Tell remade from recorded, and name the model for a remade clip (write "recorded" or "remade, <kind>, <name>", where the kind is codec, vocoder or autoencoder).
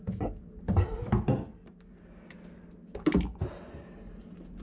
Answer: recorded